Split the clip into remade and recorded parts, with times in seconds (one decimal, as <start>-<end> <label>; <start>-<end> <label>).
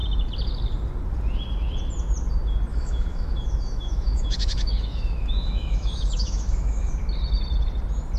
0.0-2.7 recorded; 2.7-6.9 remade; 6.9-8.2 recorded